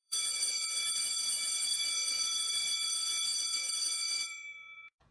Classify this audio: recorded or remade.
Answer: remade